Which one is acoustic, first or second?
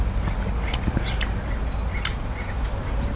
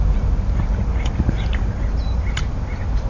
first